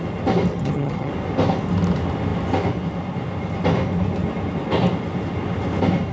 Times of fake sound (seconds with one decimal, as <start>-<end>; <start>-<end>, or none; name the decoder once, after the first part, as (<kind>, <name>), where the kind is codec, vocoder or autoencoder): 0.5-1.1 (vocoder, HiFi-GAN)